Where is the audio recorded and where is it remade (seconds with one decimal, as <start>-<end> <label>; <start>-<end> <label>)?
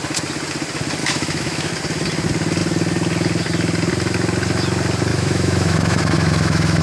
0.0-1.0 recorded; 1.0-1.7 remade; 1.7-5.1 recorded; 5.1-6.8 remade